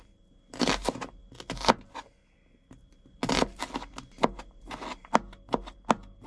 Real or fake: real